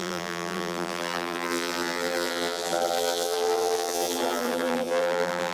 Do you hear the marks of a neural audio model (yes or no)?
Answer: yes